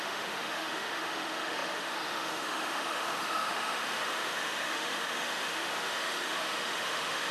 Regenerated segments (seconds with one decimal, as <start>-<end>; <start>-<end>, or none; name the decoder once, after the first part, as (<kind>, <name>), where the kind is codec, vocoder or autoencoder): 0.0-7.3 (autoencoder, DAC-VAE)